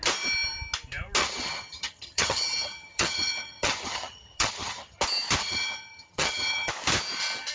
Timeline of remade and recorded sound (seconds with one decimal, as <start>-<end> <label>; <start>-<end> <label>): 0.0-1.2 recorded; 1.2-5.0 remade; 5.0-5.4 recorded; 5.4-6.7 remade; 6.7-7.5 recorded